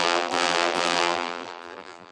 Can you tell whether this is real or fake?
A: fake